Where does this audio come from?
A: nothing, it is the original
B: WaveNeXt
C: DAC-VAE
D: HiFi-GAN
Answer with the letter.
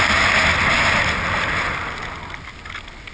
A